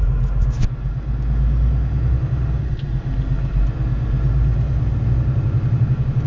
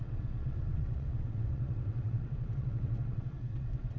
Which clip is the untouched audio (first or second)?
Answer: first